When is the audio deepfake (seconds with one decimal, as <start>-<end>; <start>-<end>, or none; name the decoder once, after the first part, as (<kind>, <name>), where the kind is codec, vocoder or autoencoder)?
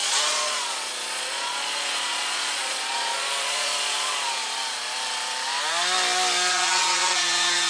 0.0-4.4 (vocoder, Vocos); 6.5-7.7